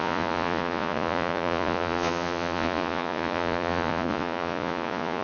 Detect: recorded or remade remade